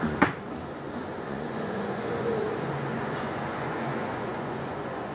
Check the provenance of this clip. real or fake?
fake